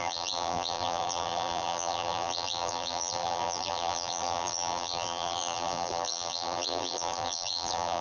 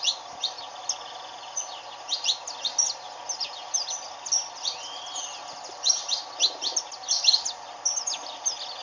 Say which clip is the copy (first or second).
first